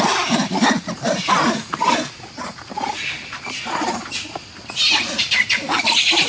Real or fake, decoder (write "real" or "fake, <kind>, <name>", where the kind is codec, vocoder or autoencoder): real